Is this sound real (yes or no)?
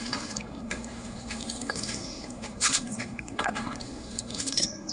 no